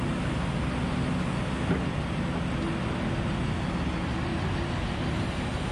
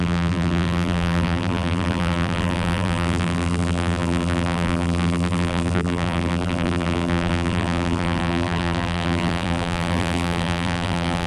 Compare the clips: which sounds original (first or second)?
first